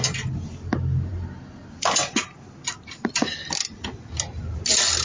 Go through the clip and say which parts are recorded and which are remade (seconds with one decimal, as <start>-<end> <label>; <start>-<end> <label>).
0.0-5.0 recorded